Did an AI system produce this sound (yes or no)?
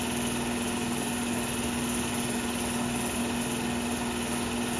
no